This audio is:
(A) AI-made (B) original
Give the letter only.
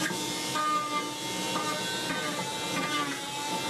B